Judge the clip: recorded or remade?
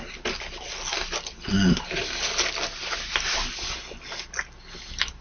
recorded